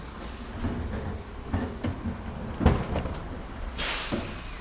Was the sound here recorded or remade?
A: recorded